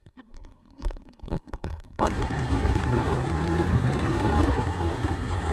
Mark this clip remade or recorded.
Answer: remade